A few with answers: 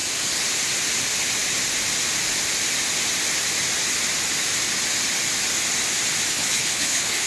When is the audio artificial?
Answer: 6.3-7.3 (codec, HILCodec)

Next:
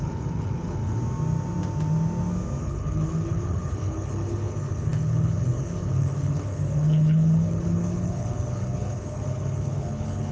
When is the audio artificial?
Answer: 0.0-1.0 (codec, HILCodec); 2.6-10.3

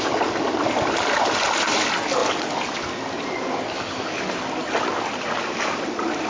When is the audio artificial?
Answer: none

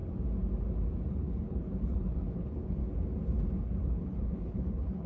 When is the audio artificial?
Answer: 1.1-2.8 (codec, HILCodec); 3.6-5.1